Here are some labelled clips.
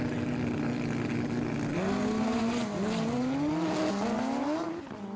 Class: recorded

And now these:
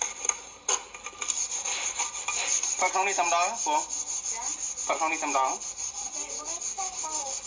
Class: recorded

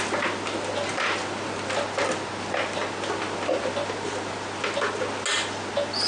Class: recorded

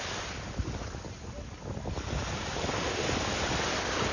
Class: recorded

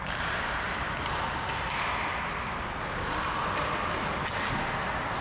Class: recorded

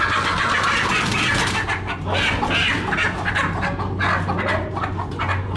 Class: recorded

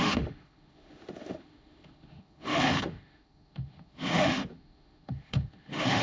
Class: remade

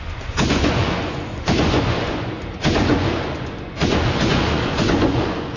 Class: remade